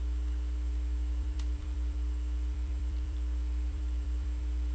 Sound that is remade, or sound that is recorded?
remade